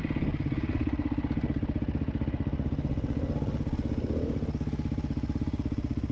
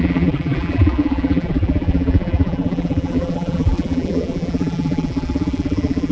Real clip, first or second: first